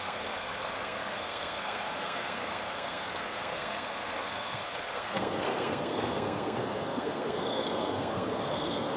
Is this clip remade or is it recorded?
remade